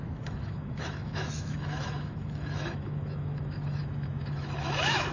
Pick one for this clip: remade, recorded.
remade